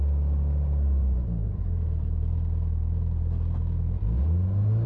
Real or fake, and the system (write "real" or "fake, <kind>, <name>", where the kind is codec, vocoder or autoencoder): real